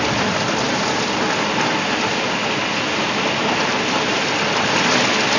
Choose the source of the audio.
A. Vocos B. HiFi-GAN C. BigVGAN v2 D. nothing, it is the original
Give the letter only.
D